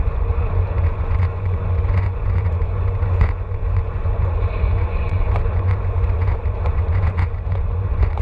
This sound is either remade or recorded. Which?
remade